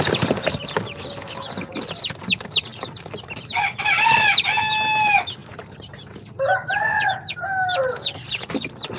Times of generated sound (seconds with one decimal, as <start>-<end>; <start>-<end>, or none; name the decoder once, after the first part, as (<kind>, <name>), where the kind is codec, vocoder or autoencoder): 2.7-3.3 (vocoder, BigVGAN v2); 5.4-7.0